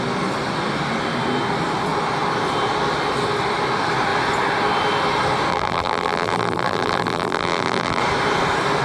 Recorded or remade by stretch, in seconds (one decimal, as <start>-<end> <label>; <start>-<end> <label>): 0.0-5.5 recorded; 5.5-8.0 remade; 8.0-8.8 recorded